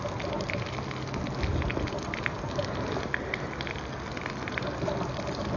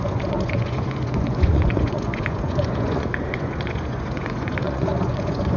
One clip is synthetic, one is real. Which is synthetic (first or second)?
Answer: second